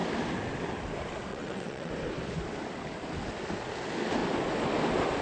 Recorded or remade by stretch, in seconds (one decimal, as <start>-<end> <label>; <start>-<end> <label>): 0.0-1.3 recorded; 1.3-1.9 remade; 1.9-5.2 recorded